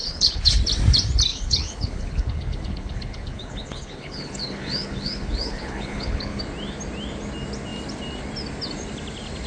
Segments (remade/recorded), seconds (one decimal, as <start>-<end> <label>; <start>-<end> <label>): 0.0-0.6 remade; 0.6-1.3 recorded; 1.3-6.4 remade; 6.4-9.5 recorded